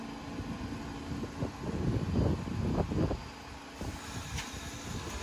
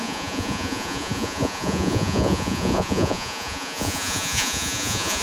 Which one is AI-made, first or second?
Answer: second